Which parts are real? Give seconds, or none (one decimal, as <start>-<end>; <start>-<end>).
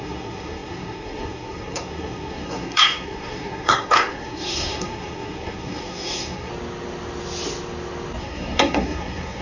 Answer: 6.5-8.2